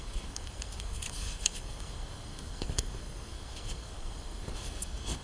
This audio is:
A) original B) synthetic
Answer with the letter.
B